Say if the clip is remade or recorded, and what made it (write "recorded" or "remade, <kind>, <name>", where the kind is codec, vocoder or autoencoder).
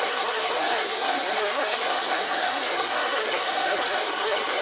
remade, codec, SNAC